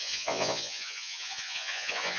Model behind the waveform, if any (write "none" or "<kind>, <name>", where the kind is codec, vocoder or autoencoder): vocoder, Vocos